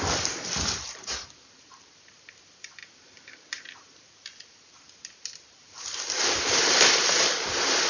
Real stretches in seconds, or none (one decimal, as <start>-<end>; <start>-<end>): none